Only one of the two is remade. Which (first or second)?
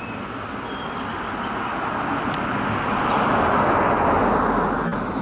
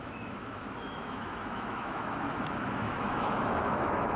second